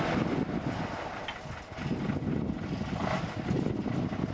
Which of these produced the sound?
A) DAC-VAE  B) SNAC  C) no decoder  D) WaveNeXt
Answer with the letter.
C